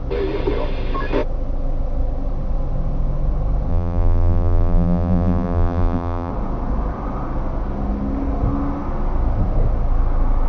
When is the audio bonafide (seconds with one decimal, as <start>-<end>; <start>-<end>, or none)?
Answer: 0.0-3.7; 6.3-10.5